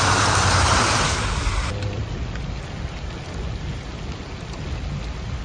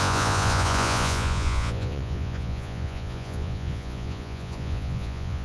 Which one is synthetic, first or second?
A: second